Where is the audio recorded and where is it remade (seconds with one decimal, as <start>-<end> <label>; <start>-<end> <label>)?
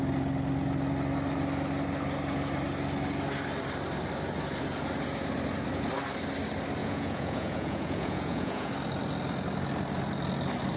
0.0-6.8 recorded; 6.8-8.7 remade; 8.7-10.8 recorded